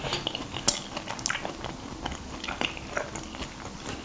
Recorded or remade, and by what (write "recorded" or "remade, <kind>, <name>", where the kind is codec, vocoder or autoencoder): recorded